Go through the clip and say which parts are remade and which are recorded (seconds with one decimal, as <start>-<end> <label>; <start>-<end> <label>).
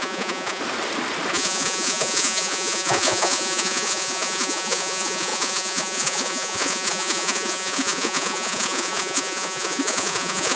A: 0.0-0.6 remade; 0.6-1.3 recorded; 1.3-10.6 remade